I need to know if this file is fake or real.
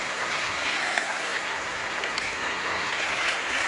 fake